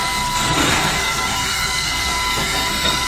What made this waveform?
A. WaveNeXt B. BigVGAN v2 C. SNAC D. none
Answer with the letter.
C